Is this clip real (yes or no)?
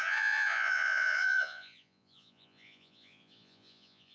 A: no